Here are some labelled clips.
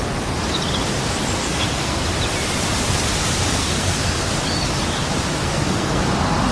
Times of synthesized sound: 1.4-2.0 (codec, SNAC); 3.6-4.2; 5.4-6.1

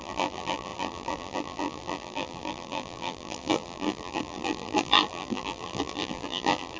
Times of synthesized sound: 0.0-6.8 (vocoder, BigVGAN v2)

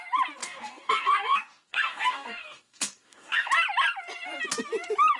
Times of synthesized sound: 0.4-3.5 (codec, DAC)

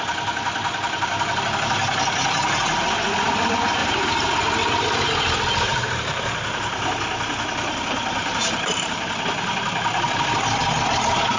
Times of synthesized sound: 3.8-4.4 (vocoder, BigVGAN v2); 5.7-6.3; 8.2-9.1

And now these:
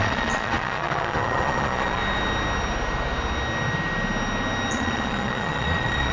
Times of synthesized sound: 0.0-2.0 (vocoder, Vocos); 4.7-6.1

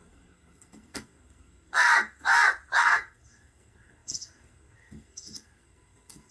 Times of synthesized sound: 0.0-2.3 (codec, SNAC); 2.8-6.3